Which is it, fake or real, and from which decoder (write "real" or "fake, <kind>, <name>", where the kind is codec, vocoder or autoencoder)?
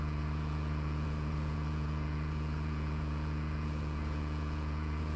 fake, vocoder, Vocos